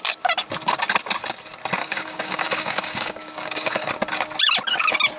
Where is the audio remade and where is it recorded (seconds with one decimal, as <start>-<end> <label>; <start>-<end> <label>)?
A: 0.0-1.8 recorded; 1.8-3.9 remade; 3.9-5.2 recorded